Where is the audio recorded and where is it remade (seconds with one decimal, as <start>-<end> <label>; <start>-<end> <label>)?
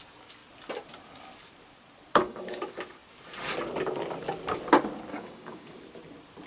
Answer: 0.0-2.1 recorded; 2.1-2.6 remade; 2.6-5.1 recorded; 5.1-5.7 remade; 5.7-6.5 recorded